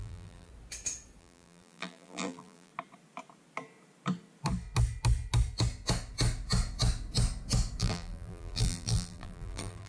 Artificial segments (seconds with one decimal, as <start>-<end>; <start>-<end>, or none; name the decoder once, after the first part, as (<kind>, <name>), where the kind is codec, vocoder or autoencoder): 0.0-0.5 (vocoder, BigVGAN v2); 1.2-2.7; 7.8-9.9